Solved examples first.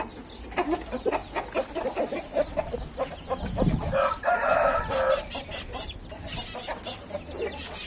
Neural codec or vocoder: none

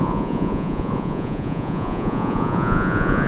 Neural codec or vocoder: vocoder, Vocos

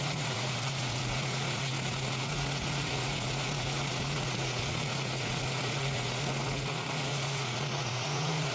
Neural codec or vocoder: vocoder, Vocos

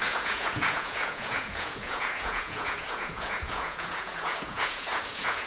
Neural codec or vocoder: vocoder, Vocos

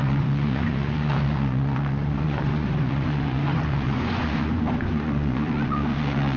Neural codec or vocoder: vocoder, Vocos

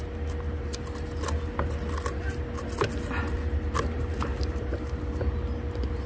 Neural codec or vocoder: none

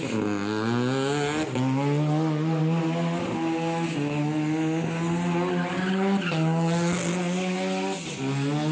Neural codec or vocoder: none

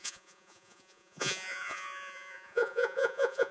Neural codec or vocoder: vocoder, Vocos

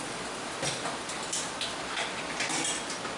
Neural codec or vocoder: none